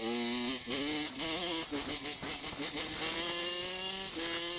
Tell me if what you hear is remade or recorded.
recorded